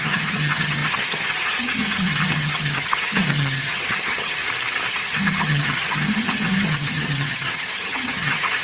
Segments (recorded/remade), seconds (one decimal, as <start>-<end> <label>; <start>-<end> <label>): 0.0-4.4 remade; 4.4-4.9 recorded; 4.9-8.6 remade